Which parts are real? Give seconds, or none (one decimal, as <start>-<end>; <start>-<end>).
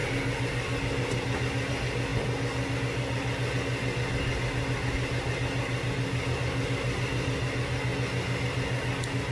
0.0-9.3